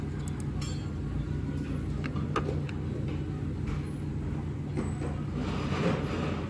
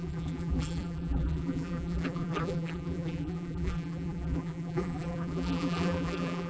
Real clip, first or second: first